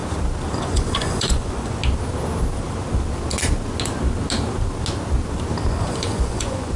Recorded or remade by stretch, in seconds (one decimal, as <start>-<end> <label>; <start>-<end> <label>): 0.0-0.6 recorded; 0.6-1.8 remade; 1.8-5.7 recorded; 5.7-6.8 remade